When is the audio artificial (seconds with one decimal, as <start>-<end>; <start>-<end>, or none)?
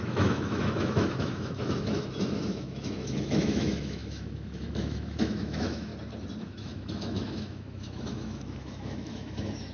0.0-5.9; 6.4-9.7